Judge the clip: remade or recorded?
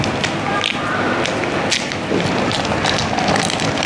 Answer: recorded